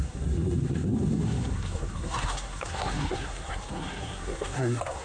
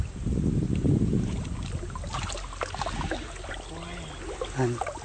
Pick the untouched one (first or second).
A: second